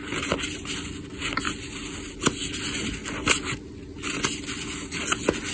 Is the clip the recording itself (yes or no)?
yes